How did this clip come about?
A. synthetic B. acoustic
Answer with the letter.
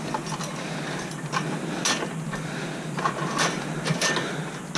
B